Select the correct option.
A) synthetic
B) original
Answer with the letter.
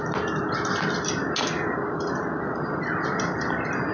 B